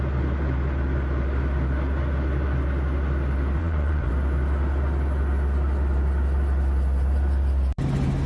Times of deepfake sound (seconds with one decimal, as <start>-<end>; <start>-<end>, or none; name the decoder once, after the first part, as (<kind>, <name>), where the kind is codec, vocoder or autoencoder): 3.6-4.1 (vocoder, Vocos)

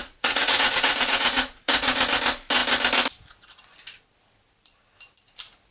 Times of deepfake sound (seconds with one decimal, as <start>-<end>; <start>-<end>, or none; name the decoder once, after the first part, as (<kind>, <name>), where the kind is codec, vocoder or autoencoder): 0.0-2.0 (vocoder, Vocos)